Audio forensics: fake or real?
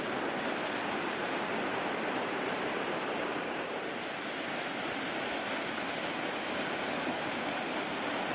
real